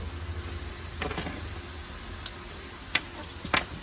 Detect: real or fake real